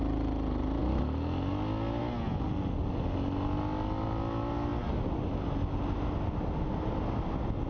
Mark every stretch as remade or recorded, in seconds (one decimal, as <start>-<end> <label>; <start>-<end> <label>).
0.0-7.7 recorded